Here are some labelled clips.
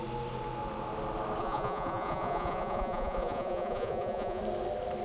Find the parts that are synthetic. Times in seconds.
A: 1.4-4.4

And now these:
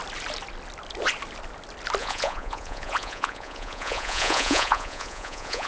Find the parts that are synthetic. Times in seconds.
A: 2.0-5.7

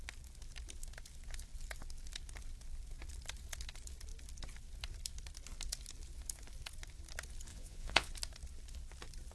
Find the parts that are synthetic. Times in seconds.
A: 7.5-8.1

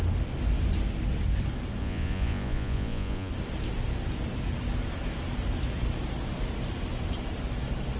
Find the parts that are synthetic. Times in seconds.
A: 1.8-3.3